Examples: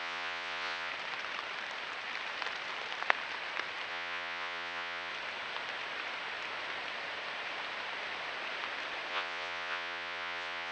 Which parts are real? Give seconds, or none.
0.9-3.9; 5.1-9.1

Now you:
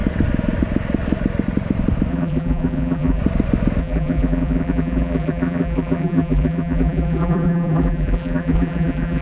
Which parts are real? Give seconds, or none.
0.0-2.1; 3.2-3.8

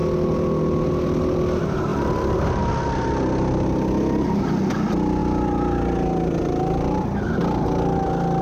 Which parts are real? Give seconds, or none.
0.0-1.9; 2.6-8.4

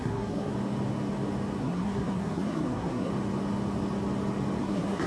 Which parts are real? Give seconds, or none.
0.5-1.6; 3.1-4.6

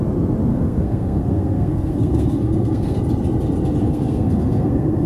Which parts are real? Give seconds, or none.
0.0-0.5; 3.0-3.8

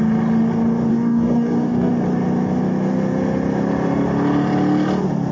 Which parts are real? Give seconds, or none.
0.0-0.9; 1.9-5.3

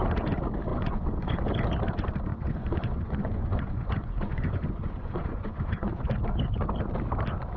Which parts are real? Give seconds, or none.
0.0-0.7; 1.5-2.3; 6.1-7.6

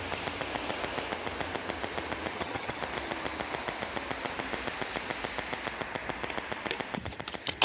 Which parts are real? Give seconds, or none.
0.0-2.3; 2.8-7.6